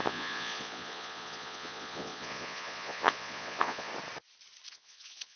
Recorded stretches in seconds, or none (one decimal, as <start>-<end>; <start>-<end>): 3.9-4.7

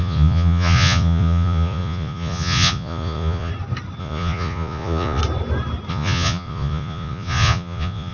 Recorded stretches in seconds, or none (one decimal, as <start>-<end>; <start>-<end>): 3.5-4.0; 5.2-5.9

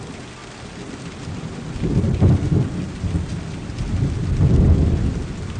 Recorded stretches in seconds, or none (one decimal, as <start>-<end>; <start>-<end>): 0.0-5.6

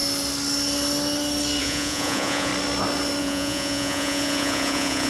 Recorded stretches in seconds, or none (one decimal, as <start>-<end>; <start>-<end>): 0.0-1.6; 2.5-3.2